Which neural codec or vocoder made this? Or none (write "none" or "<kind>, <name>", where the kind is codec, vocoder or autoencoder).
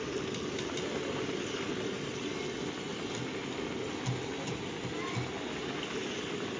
none